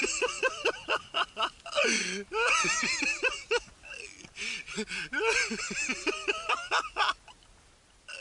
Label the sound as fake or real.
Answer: real